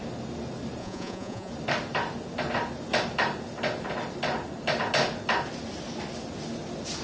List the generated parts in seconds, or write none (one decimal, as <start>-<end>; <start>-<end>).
0.8-1.5